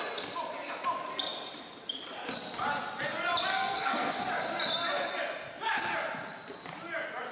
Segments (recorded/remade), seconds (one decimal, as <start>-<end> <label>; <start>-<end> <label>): 0.0-3.5 recorded; 3.5-4.2 remade; 4.2-7.3 recorded